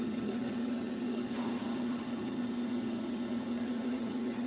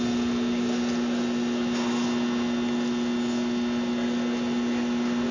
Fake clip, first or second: first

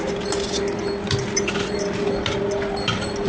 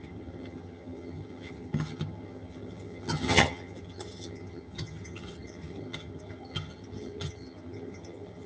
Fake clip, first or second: second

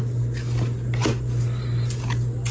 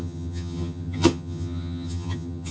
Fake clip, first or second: second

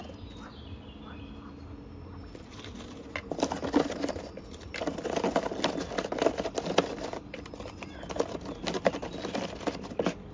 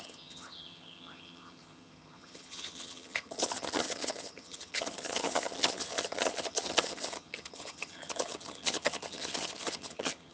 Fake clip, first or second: second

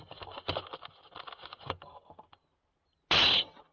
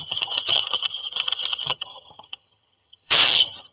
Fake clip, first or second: second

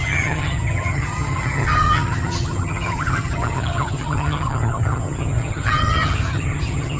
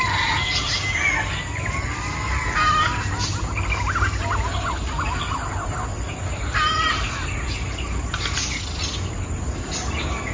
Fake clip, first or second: first